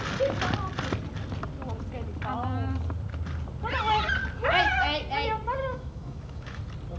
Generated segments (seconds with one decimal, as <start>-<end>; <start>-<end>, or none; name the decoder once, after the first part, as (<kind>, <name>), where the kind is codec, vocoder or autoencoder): 5.6-6.6 (autoencoder, DAC-VAE)